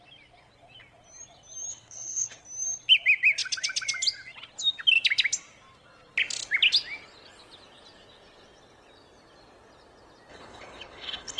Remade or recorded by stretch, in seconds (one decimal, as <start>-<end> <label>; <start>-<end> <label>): 0.0-1.7 recorded; 1.7-2.4 remade; 2.4-10.3 recorded; 10.3-11.4 remade